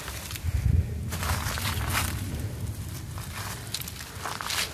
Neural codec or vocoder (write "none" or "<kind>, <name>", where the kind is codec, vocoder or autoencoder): none